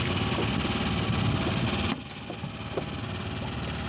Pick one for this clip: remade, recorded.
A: recorded